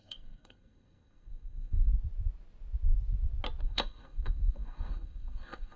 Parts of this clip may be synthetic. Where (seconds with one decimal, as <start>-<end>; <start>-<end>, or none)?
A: 0.0-1.9; 3.6-5.8